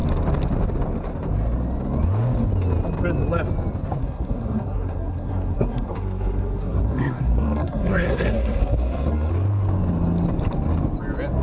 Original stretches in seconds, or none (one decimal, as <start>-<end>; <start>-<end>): 0.0-4.0; 9.3-11.4

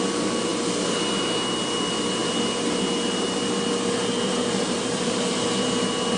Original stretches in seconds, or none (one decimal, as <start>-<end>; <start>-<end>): 0.0-6.2

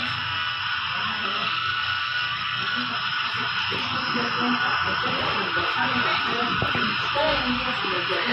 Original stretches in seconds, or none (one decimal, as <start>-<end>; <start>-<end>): 0.6-1.1; 2.9-8.3